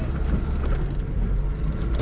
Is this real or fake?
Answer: real